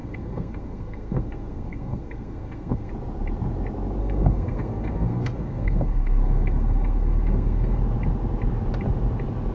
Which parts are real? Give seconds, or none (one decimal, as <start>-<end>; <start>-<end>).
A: 2.9-4.0; 7.8-9.5